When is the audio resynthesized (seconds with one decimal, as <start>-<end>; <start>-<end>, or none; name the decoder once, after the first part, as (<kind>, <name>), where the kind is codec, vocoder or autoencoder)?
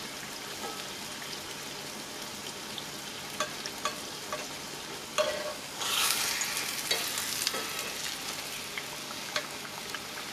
5.5-6.2 (codec, DAC); 9.0-9.8